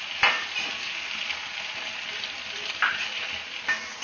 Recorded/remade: recorded